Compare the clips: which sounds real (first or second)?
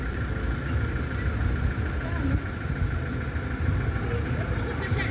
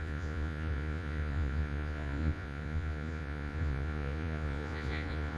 first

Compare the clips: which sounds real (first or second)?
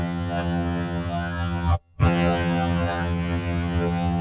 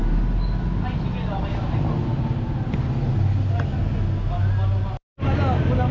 second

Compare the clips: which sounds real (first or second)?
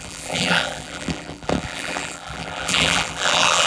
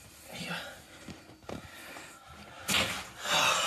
second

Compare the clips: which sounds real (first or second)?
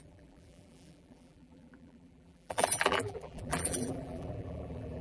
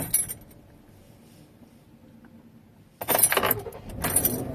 second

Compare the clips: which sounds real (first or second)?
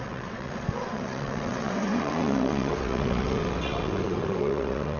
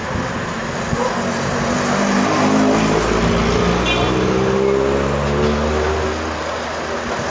second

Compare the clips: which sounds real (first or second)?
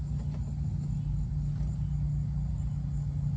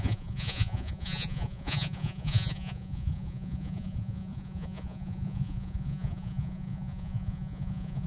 first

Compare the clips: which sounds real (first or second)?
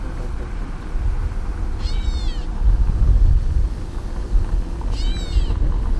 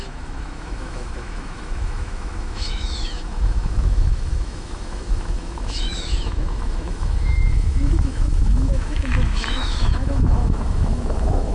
first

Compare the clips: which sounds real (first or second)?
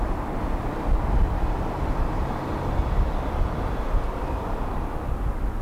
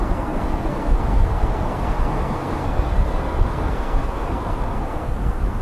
first